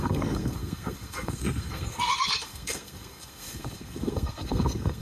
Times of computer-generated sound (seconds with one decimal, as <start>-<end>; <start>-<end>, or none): 0.0-5.0